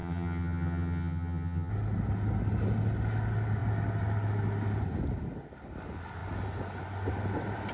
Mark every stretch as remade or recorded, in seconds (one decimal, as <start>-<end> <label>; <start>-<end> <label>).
0.0-1.7 remade; 1.7-7.7 recorded